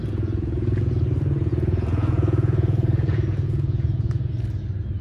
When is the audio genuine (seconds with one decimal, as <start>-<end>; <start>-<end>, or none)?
0.8-1.5; 4.3-5.0